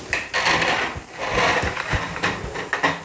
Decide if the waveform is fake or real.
real